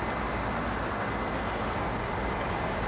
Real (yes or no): yes